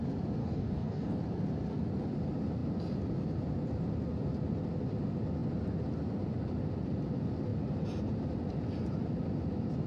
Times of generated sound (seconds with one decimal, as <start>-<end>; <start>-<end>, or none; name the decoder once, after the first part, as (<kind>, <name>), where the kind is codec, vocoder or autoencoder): 0.4-1.2 (codec, DAC)